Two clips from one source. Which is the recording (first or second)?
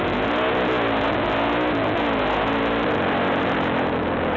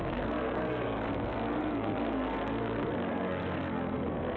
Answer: first